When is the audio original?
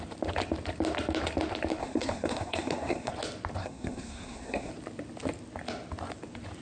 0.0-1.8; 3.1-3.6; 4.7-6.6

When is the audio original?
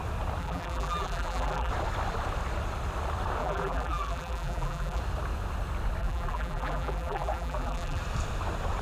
0.0-0.4; 1.7-3.4; 5.0-6.0; 8.0-8.8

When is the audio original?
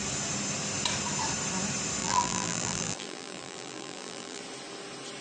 0.0-2.0; 4.4-5.2